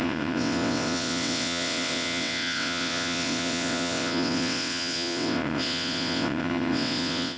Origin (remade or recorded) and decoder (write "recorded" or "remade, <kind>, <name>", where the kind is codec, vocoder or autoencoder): remade, vocoder, WaveNeXt